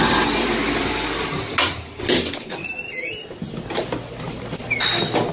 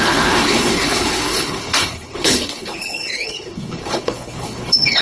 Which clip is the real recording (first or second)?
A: first